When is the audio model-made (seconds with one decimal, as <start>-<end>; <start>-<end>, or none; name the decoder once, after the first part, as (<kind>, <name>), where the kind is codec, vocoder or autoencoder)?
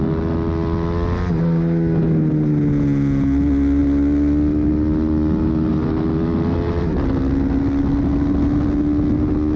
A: none